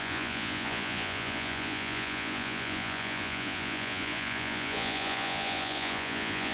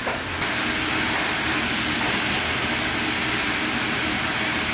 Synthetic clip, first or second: first